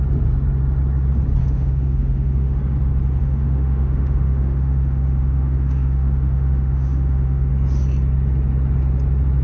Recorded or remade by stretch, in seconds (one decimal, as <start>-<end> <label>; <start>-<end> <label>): 0.0-1.4 recorded; 1.4-2.6 remade; 2.6-3.2 recorded; 3.2-7.5 remade; 7.5-9.4 recorded